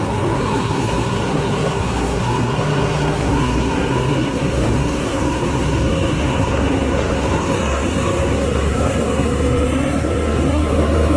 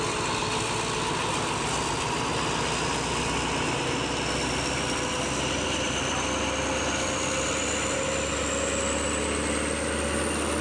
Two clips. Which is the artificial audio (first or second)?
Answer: first